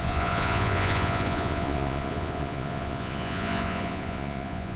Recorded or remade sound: remade